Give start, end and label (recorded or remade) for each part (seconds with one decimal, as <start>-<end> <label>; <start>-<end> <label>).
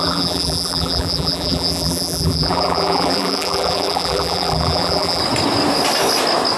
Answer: 0.0-5.2 remade; 5.2-6.6 recorded